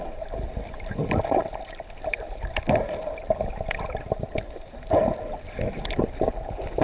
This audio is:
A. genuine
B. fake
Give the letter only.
A